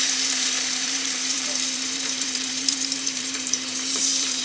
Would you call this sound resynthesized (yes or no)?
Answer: yes